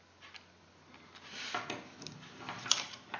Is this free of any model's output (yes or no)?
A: yes